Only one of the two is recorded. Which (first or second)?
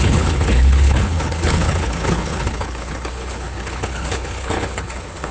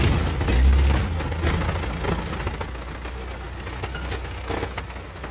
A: second